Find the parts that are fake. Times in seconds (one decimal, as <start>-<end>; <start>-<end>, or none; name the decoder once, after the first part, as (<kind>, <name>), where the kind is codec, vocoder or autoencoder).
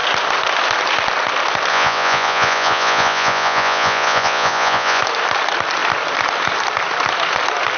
1.7-5.0 (vocoder, Vocos)